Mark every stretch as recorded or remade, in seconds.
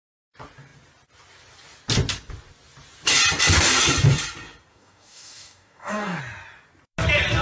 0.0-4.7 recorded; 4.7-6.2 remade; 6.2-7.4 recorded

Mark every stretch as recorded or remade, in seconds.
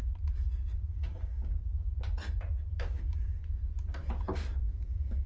0.0-0.9 recorded; 0.9-1.6 remade; 1.6-2.7 recorded; 2.7-3.4 remade; 3.4-4.3 recorded; 4.3-5.3 remade